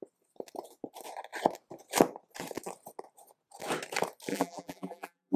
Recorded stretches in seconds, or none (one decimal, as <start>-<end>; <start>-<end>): 0.0-4.3